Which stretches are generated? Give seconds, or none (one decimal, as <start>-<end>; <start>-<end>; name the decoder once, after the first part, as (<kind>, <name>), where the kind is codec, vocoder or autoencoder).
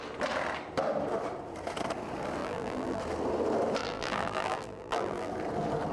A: 2.4-3.0 (vocoder, BigVGAN v2); 3.8-5.3